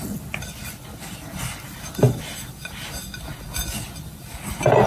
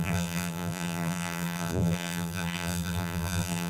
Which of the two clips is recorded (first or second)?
first